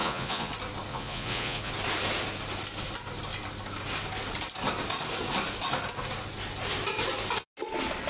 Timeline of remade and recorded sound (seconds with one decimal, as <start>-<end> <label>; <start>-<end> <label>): 0.0-0.5 remade; 0.5-0.9 recorded; 0.9-1.7 remade; 1.7-8.1 recorded